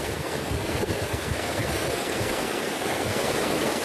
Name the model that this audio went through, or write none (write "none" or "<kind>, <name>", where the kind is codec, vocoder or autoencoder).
codec, SNAC